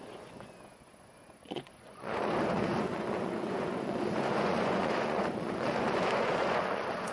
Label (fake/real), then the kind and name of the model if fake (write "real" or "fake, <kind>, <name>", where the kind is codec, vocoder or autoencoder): fake, vocoder, Vocos